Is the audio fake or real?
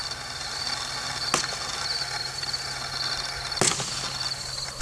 real